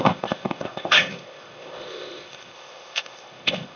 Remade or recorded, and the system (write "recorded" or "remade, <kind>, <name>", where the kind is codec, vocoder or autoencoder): remade, codec, ZipCodec